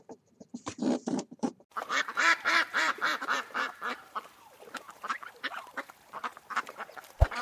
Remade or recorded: remade